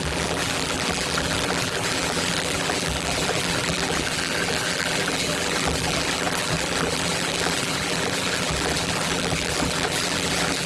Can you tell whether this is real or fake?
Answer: fake